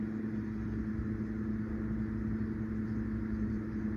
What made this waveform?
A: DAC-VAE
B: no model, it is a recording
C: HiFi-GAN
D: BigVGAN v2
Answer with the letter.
B